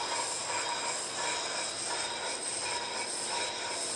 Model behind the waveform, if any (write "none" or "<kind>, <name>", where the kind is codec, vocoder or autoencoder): none